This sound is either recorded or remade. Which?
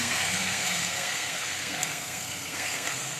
remade